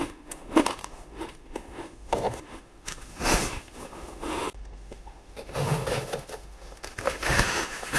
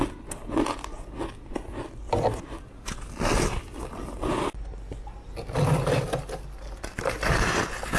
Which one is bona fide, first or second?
second